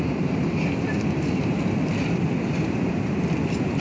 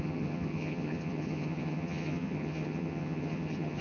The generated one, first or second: second